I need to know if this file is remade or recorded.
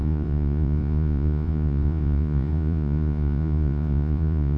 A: remade